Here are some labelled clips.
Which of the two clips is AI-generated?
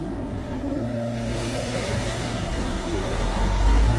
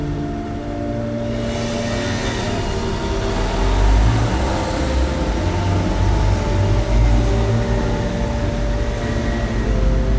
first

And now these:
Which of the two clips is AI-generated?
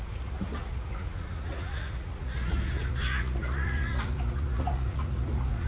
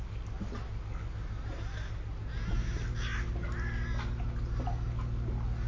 first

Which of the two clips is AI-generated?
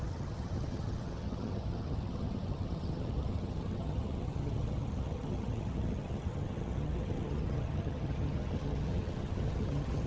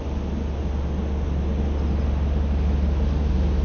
first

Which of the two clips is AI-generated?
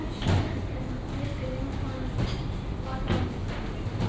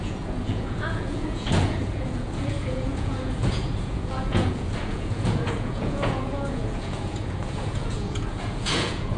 second